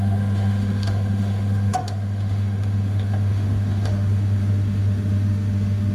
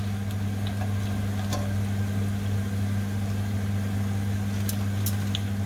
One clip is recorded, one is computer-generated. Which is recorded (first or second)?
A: second